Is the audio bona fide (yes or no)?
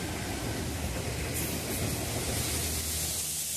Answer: yes